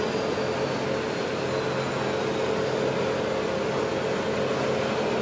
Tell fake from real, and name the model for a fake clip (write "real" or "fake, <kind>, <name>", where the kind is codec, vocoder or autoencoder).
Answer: real